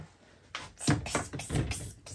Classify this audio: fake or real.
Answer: real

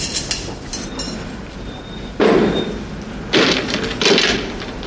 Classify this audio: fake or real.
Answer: real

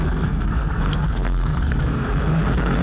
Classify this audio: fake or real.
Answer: fake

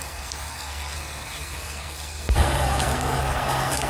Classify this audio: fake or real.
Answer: fake